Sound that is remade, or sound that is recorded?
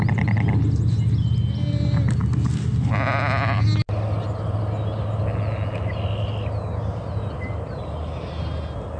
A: recorded